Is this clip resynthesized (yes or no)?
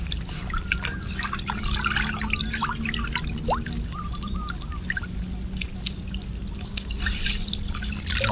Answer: no